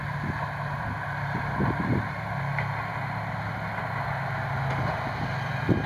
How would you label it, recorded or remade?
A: recorded